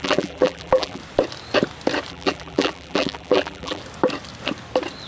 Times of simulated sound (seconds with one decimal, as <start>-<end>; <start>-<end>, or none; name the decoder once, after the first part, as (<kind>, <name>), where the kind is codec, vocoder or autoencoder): 0.0-1.0 (vocoder, BigVGAN v2); 2.1-3.8